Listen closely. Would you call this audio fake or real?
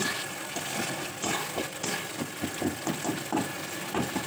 real